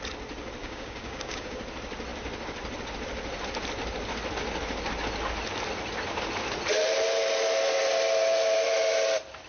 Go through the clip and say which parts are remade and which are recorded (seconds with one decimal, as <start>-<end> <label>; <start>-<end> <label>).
0.0-0.6 recorded; 0.6-1.6 remade; 1.6-9.5 recorded